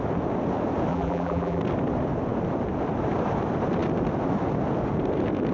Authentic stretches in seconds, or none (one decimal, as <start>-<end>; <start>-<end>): 0.0-0.9; 1.6-5.5